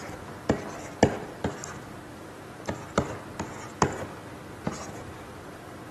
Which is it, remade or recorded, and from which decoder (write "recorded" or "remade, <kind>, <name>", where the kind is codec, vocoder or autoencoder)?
recorded